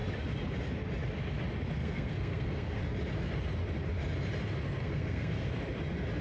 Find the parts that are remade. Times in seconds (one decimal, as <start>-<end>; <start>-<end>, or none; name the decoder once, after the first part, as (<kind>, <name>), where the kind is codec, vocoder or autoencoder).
1.8-2.8 (codec, SNAC); 4.8-5.5